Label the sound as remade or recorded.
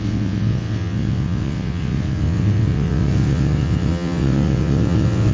remade